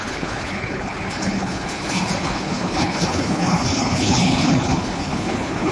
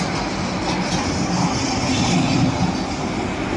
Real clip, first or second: second